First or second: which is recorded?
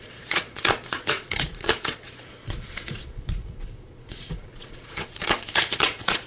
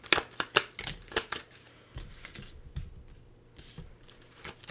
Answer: second